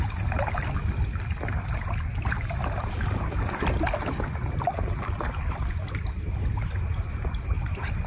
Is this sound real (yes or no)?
yes